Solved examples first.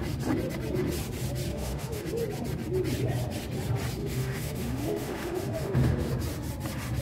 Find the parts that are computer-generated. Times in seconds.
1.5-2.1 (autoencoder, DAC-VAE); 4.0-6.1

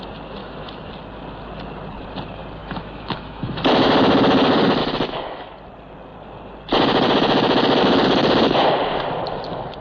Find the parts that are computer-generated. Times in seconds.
0.4-0.9 (autoencoder, DAC-VAE); 2.6-3.6; 4.8-5.6

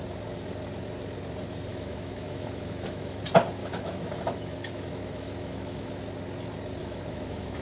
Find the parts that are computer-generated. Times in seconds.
1.7-3.2 (autoencoder, DAC-VAE); 3.6-5.9; 6.8-7.6

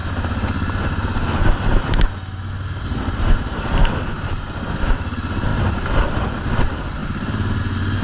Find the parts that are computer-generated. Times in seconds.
none

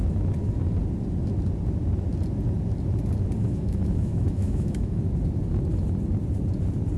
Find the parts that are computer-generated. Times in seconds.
3.4-5.0 (autoencoder, DAC-VAE)

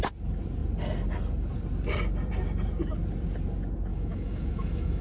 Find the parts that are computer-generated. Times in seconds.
3.9-5.0 (autoencoder, DAC-VAE)

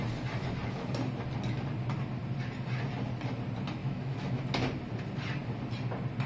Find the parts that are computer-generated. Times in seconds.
3.8-4.4 (autoencoder, DAC-VAE)

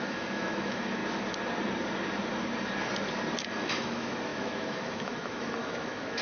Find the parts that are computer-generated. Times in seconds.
0.0-1.0 (autoencoder, DAC-VAE); 3.4-6.2